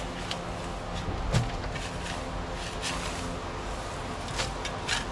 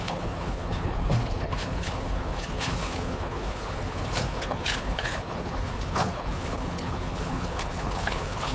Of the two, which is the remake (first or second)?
second